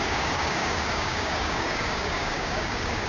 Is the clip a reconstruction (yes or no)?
yes